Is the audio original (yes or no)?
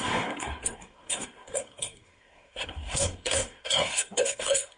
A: no